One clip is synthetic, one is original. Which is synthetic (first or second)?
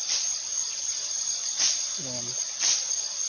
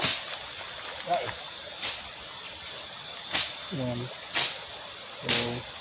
first